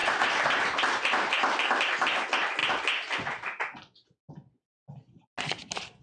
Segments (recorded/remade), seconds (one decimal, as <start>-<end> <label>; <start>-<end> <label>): 0.0-6.0 recorded